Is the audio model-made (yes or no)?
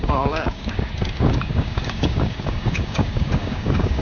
yes